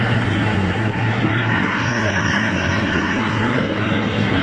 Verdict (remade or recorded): remade